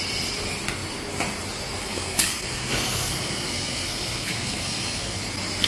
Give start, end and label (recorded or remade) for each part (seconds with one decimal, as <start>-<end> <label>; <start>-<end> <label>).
0.0-1.8 recorded; 1.8-5.2 remade; 5.2-5.7 recorded